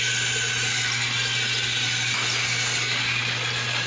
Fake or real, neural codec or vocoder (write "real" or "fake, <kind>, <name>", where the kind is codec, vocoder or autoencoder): real